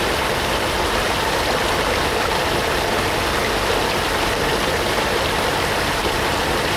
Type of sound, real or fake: real